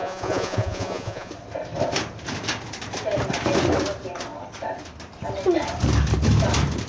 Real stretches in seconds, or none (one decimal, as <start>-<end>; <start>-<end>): 1.3-6.9